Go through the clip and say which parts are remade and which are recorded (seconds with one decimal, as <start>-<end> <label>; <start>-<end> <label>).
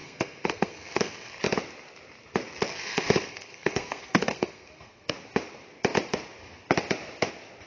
0.0-1.4 remade; 1.4-2.7 recorded; 2.7-5.1 remade; 5.1-7.7 recorded